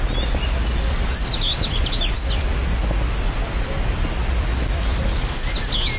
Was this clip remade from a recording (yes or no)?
no